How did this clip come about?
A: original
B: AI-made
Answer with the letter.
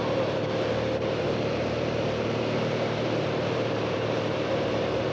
B